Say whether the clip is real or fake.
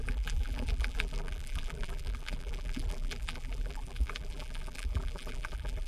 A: fake